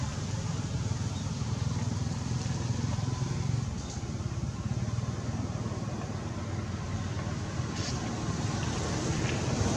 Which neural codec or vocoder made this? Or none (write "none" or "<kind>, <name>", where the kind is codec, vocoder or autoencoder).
none